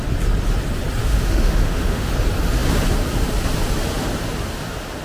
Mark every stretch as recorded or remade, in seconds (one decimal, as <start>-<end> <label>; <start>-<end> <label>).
0.0-1.0 recorded; 1.0-2.1 remade; 2.1-5.0 recorded